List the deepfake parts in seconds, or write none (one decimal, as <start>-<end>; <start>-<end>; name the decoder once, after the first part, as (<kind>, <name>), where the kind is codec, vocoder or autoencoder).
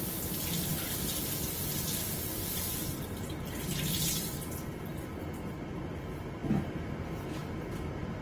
none